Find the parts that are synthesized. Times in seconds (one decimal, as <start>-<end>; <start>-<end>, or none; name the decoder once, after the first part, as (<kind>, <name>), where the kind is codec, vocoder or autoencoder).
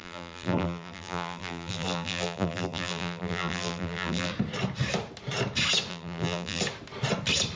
0.0-4.3 (vocoder, BigVGAN v2); 5.9-6.6